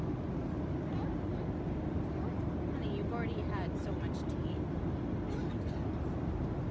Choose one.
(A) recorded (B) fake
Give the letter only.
A